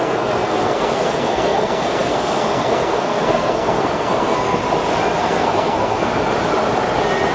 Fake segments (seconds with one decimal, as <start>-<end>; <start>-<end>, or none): 0.0-4.6; 5.2-6.1